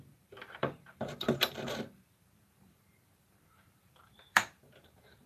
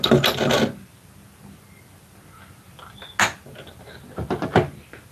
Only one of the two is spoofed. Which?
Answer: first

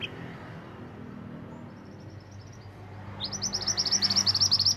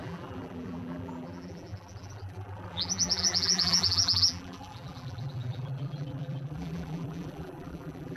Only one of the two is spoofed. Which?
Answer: second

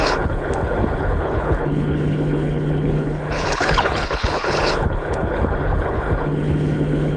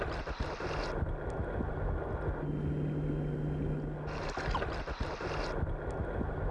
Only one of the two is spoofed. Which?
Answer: first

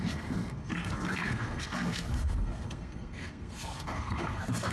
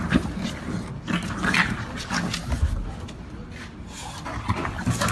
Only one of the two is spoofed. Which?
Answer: first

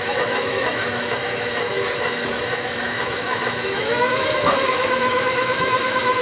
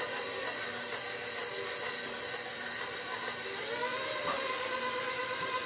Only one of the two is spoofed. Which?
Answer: first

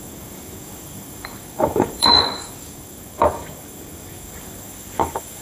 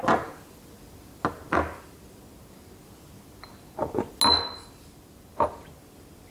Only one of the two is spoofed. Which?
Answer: first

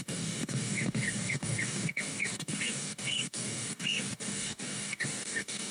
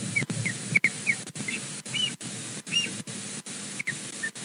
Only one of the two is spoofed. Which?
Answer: first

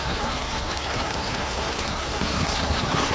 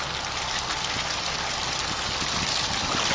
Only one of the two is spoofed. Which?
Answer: first